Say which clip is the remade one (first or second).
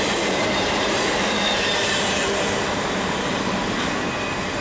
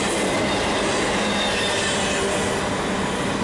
first